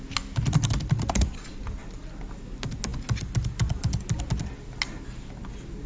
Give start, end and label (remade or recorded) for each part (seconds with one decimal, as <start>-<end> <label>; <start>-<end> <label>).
0.0-2.9 recorded; 2.9-4.2 remade; 4.2-5.9 recorded